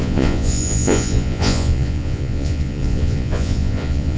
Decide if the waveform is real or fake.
fake